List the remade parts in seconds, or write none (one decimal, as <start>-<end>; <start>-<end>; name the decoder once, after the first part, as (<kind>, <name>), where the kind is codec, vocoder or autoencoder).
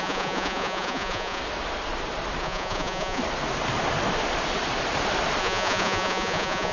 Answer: 0.0-1.4 (vocoder, Vocos); 2.4-3.2; 5.4-6.7